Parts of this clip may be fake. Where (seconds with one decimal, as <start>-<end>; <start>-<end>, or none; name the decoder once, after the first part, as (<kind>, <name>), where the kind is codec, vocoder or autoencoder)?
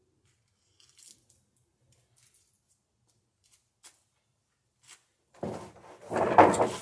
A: none